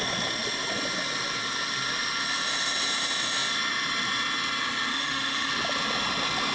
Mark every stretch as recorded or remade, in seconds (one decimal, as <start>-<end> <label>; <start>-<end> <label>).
0.0-4.9 recorded; 4.9-5.5 remade; 5.5-6.5 recorded